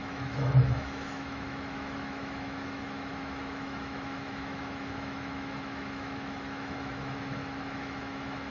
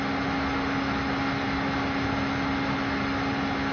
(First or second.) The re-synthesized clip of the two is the first